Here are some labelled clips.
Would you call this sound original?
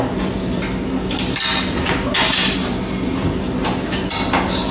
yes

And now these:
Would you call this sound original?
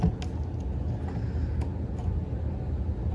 yes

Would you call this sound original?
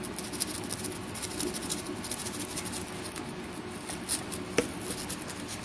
yes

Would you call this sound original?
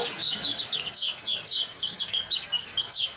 no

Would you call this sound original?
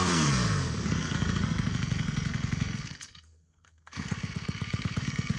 no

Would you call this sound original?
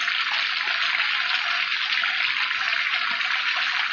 yes